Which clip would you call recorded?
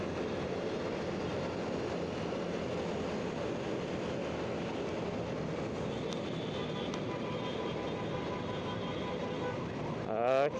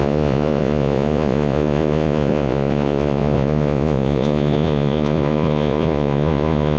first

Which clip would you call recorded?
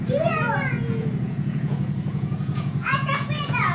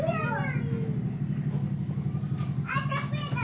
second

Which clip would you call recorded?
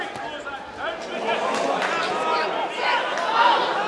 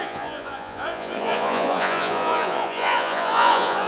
first